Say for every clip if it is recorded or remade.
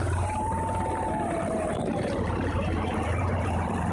remade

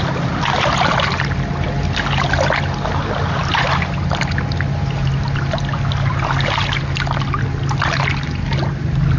recorded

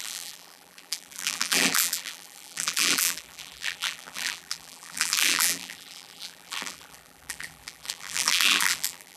remade